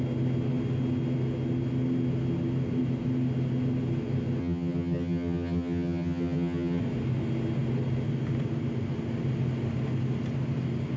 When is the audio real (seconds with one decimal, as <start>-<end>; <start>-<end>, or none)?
0.0-4.4; 6.8-11.0